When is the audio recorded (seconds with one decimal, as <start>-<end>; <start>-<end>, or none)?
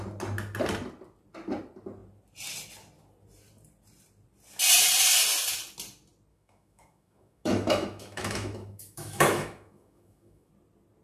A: 0.0-6.3; 10.5-11.0